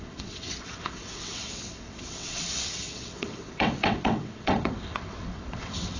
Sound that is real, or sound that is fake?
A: fake